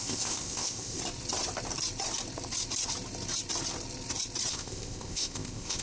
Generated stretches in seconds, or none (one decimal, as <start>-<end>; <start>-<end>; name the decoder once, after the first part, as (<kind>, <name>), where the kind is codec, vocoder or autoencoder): 0.0-1.0 (codec, ZipCodec); 4.5-5.8